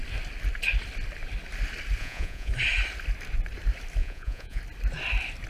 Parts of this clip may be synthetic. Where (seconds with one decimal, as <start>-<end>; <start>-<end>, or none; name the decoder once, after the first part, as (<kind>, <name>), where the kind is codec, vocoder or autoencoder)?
2.0-2.5 (vocoder, Vocos); 4.0-4.6